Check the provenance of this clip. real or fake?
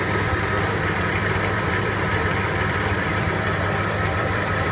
fake